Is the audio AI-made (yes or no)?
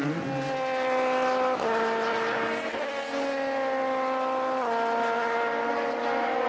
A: no